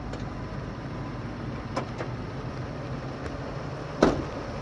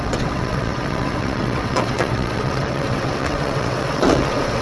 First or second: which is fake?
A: second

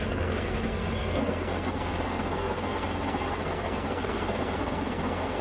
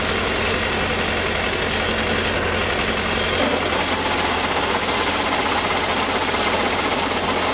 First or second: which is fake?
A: first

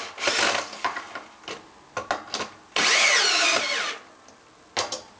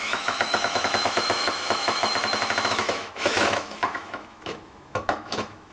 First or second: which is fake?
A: second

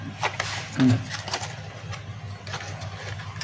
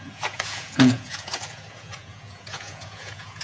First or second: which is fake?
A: second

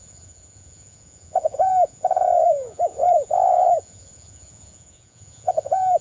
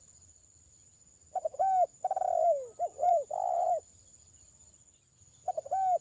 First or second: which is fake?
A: first